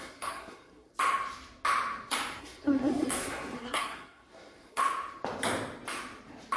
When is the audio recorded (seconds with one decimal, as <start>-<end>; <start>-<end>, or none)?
0.9-2.4; 4.8-6.6